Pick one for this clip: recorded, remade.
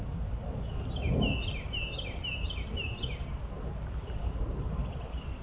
recorded